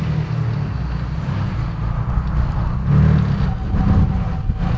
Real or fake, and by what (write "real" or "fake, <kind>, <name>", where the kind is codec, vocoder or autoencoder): real